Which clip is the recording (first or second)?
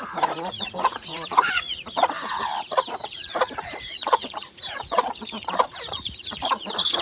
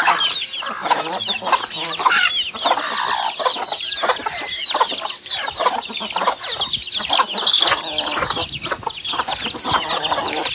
second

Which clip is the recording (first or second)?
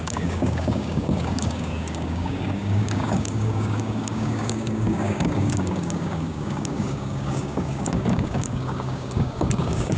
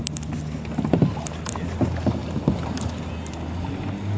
second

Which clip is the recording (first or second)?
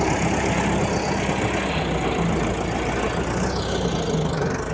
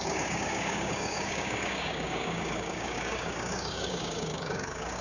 first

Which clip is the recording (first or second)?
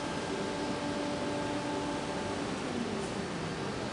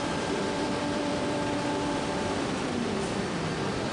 first